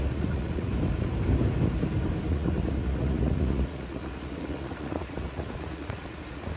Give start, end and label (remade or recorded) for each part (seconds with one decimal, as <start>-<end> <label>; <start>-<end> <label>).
0.0-0.7 remade; 0.7-2.3 recorded; 2.3-6.6 remade